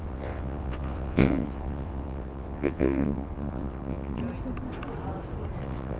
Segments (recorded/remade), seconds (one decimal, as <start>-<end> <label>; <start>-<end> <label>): 0.0-4.2 remade; 4.2-5.6 recorded; 5.6-6.0 remade